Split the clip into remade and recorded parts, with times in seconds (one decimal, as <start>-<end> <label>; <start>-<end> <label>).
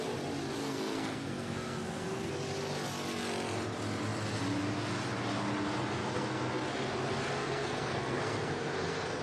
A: 0.0-0.6 recorded; 0.6-2.3 remade; 2.3-6.0 recorded; 6.0-6.5 remade; 6.5-7.4 recorded; 7.4-9.2 remade